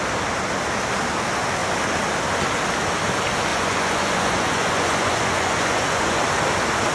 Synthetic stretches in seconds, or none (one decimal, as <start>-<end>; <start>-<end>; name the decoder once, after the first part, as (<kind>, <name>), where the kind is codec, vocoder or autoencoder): 3.5-6.2 (vocoder, Vocos)